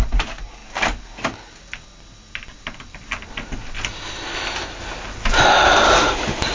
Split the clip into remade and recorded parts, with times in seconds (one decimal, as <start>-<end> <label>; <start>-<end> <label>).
0.0-6.5 recorded